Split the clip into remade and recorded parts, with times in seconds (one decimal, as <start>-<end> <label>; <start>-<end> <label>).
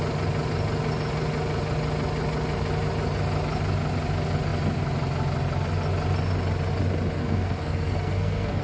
0.0-7.2 recorded; 7.2-8.6 remade